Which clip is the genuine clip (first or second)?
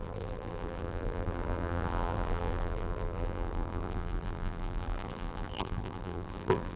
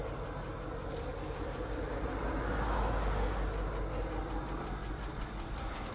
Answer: second